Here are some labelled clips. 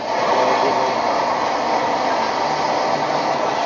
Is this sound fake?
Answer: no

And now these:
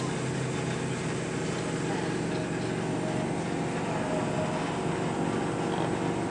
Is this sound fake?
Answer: no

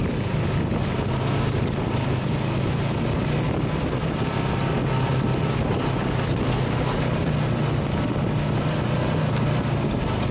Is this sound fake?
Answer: no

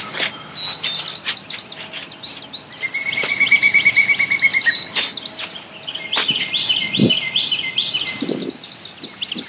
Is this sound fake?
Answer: no